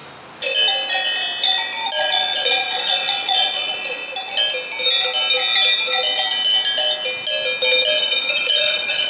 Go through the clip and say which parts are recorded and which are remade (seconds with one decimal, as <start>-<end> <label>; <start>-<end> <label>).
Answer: 0.0-2.0 recorded; 2.0-4.0 remade; 4.0-8.0 recorded; 8.0-9.1 remade